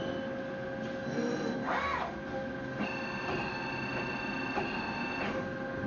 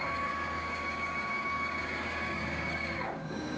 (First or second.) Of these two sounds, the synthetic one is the second